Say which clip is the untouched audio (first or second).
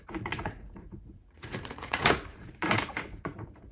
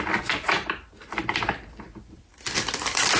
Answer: second